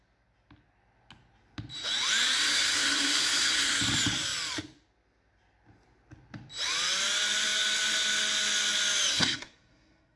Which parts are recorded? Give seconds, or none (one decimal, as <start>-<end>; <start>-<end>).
0.0-2.5; 3.8-9.1